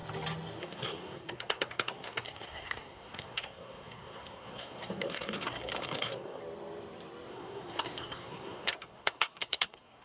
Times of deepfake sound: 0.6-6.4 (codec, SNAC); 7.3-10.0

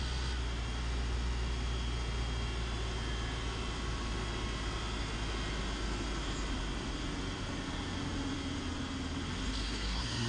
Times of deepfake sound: 9.6-10.3 (codec, SNAC)

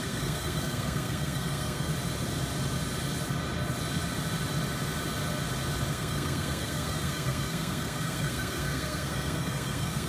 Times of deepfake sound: 0.0-1.9 (codec, SNAC); 5.9-10.1

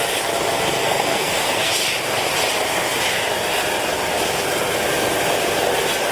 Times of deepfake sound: 0.8-1.7 (codec, SNAC)

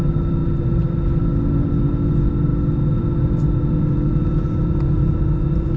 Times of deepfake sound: none

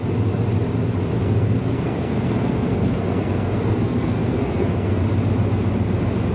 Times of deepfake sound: 1.2-5.0 (codec, SNAC)

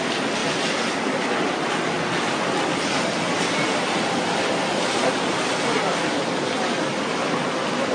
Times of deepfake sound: none